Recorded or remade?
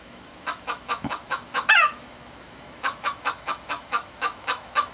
remade